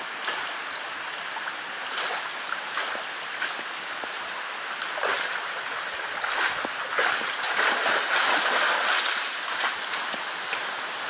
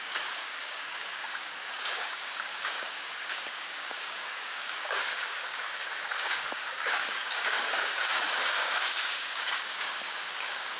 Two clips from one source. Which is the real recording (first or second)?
first